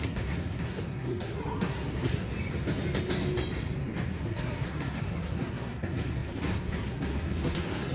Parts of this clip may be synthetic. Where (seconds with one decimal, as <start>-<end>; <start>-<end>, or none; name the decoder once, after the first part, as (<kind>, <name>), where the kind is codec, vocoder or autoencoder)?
0.0-2.3 (codec, SNAC); 4.2-7.9